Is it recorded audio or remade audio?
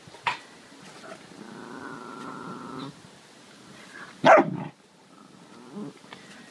recorded